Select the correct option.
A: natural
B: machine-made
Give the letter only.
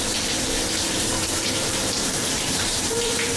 B